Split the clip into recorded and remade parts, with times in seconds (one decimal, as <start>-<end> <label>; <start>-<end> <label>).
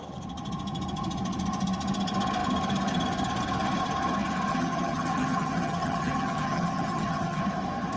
0.0-4.5 recorded; 4.5-7.4 remade; 7.4-8.0 recorded